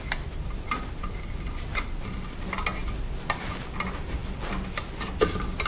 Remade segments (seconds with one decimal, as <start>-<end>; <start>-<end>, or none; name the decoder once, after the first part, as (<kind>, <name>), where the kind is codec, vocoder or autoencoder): none